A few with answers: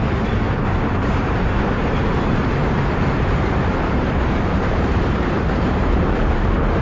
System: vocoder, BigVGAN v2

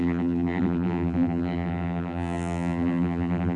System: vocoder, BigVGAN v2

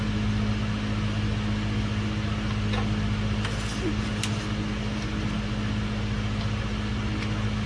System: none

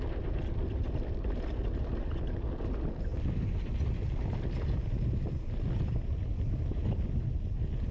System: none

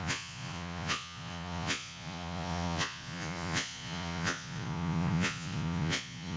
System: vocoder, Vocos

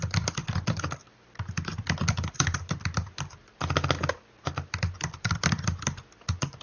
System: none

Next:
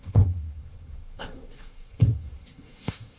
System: codec, SNAC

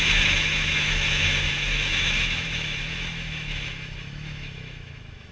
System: autoencoder, DAC-VAE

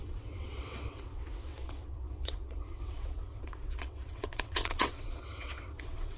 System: vocoder, WaveNeXt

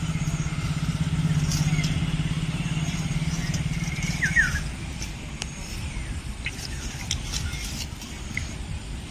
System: none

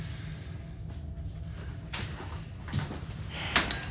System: none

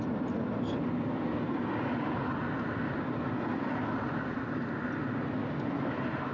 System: none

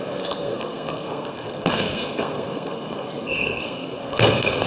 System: codec, SNAC